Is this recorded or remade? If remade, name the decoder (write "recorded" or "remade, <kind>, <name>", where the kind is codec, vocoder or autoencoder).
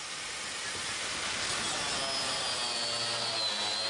recorded